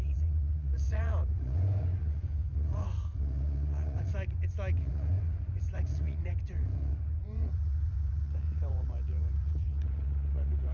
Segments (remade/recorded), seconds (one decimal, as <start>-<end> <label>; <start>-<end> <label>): 0.0-10.7 remade